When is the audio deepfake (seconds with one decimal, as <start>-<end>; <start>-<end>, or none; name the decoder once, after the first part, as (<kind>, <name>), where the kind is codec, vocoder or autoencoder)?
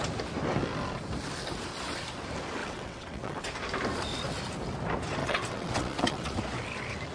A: 2.6-3.5 (vocoder, WaveNeXt); 5.2-6.4